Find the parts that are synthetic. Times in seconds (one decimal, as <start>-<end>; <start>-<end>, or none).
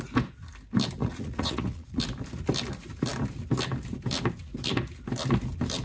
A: 1.0-2.0